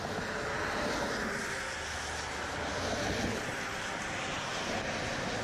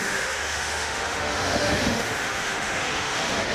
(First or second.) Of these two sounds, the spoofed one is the second